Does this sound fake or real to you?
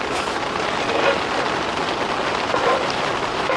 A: real